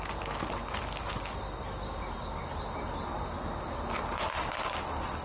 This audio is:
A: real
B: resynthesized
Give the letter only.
A